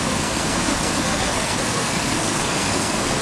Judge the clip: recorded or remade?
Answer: remade